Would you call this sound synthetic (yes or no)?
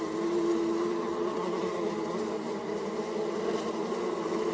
yes